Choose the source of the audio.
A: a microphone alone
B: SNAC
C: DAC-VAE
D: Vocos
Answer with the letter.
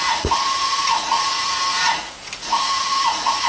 D